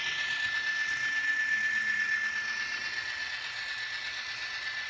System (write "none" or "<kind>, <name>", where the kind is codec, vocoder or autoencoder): none